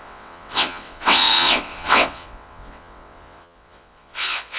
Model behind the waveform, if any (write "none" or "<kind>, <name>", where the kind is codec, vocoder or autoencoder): vocoder, WaveNeXt